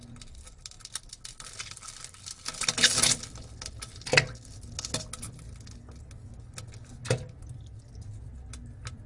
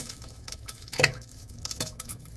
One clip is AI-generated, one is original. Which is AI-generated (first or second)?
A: second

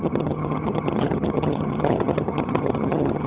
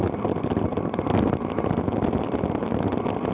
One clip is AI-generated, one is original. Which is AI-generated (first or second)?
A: first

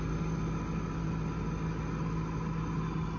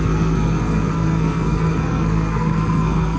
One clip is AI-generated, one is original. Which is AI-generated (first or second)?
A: second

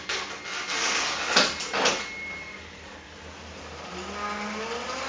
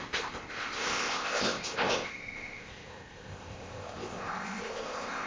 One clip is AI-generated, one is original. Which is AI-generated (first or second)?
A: second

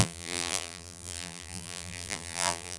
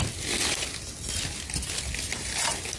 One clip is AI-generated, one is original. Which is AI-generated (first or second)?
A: first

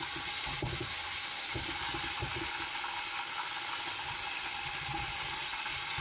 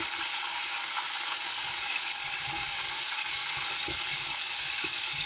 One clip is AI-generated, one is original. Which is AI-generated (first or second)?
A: second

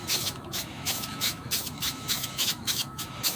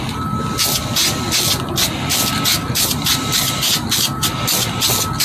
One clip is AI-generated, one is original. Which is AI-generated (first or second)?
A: first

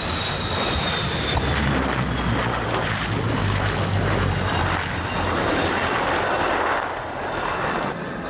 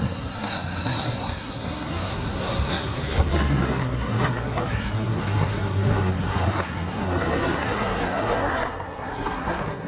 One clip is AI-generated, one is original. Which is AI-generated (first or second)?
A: second